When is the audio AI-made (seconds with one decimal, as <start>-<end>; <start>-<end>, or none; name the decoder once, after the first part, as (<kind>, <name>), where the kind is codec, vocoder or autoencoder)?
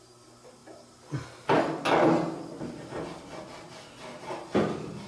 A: none